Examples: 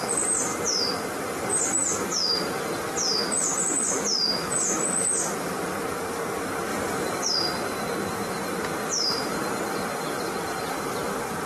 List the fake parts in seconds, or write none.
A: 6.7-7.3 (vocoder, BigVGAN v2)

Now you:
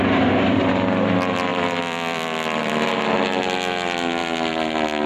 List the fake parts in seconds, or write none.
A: 1.5-2.7 (vocoder, BigVGAN v2); 4.2-5.1

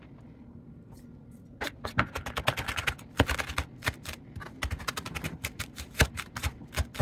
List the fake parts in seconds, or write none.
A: 4.4-6.6 (vocoder, BigVGAN v2)

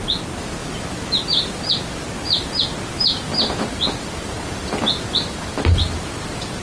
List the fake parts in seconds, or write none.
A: 3.3-6.6 (vocoder, BigVGAN v2)

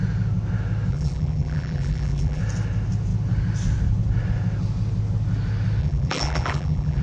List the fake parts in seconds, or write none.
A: 0.9-2.4 (vocoder, BigVGAN v2); 5.8-7.0

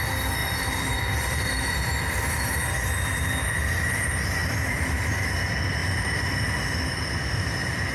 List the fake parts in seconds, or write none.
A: 0.4-1.9 (vocoder, BigVGAN v2); 4.4-5.1; 5.8-6.6

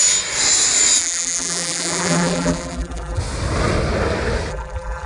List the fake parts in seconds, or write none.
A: 1.0-3.2 (vocoder, BigVGAN v2); 4.5-5.1